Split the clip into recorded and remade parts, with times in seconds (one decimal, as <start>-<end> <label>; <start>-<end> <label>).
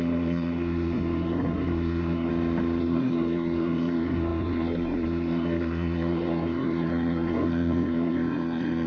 0.0-2.3 remade; 2.3-2.8 recorded; 2.8-8.9 remade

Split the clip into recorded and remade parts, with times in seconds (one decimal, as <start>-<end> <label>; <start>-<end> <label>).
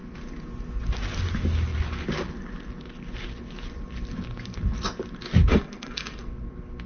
0.0-5.5 recorded; 5.5-6.3 remade; 6.3-6.9 recorded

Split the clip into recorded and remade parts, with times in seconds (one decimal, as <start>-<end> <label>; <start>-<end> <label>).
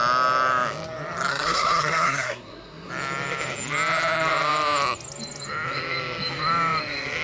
0.0-1.3 recorded; 1.3-2.9 remade; 2.9-7.2 recorded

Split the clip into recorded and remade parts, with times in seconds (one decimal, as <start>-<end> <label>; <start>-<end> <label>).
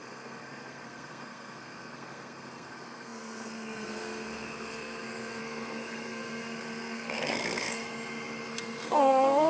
0.0-7.8 remade; 7.8-8.5 recorded; 8.5-9.5 remade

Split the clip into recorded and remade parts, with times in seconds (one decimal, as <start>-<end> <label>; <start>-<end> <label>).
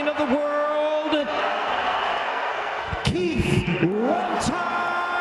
0.0-1.2 recorded; 1.2-4.3 remade; 4.3-5.2 recorded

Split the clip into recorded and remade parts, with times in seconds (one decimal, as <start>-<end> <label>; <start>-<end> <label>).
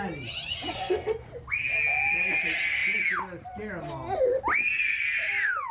0.0-0.7 recorded; 0.7-1.3 remade; 1.3-5.7 recorded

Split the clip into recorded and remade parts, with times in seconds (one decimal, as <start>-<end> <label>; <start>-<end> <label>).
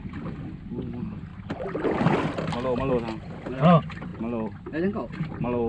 0.0-5.7 recorded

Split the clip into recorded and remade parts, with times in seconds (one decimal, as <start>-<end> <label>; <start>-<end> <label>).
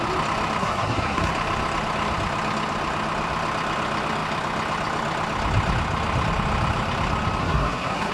0.0-0.6 recorded; 0.6-1.3 remade; 1.3-7.4 recorded; 7.4-8.1 remade